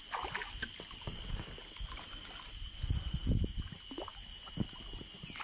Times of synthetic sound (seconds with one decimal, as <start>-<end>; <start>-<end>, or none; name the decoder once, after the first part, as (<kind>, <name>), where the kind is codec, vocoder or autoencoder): none